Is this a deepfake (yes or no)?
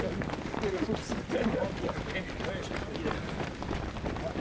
no